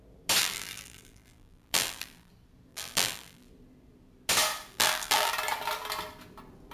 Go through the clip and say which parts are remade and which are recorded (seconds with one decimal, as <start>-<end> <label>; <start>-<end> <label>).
0.0-0.4 recorded; 0.4-2.3 remade; 2.3-2.7 recorded; 2.7-3.5 remade; 3.5-4.7 recorded; 4.7-5.3 remade; 5.3-6.7 recorded